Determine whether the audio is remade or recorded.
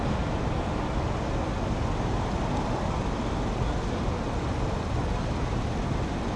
recorded